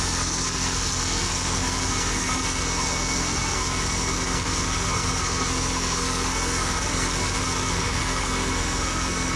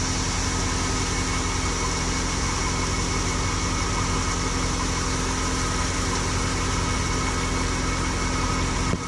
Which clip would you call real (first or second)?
second